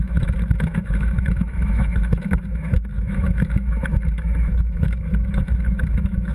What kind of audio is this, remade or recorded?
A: remade